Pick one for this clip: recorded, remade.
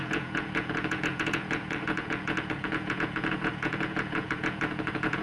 remade